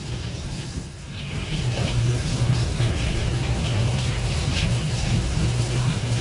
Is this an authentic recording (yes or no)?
no